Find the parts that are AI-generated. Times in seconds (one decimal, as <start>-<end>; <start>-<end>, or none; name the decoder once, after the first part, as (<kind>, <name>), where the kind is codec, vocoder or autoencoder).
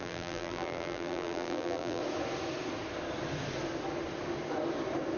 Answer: 0.0-2.0 (vocoder, BigVGAN v2)